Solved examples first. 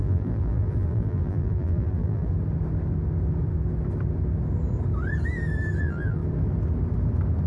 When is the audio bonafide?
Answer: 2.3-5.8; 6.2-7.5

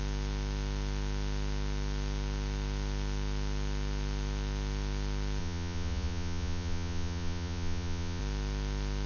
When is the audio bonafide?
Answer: 0.0-5.4; 8.2-9.1